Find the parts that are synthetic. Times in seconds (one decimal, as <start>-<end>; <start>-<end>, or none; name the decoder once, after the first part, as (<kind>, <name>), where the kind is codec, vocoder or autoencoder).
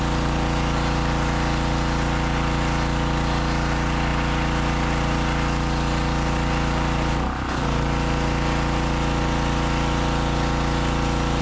none